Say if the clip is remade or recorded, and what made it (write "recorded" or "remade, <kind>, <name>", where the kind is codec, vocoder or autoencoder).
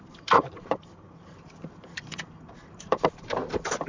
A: remade, vocoder, BigVGAN v2